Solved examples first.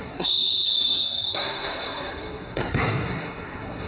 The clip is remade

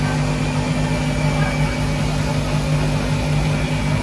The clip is recorded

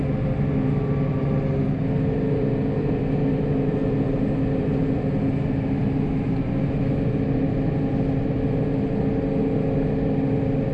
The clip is recorded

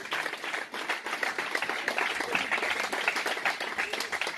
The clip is recorded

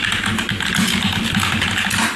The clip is recorded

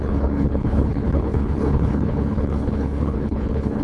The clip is remade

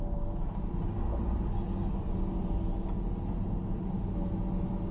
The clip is recorded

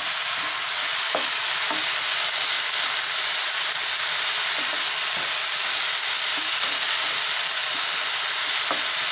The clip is recorded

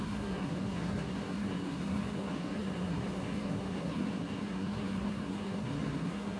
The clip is remade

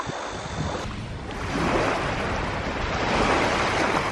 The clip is recorded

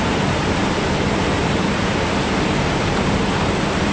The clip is remade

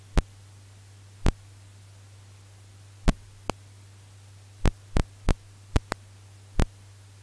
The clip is recorded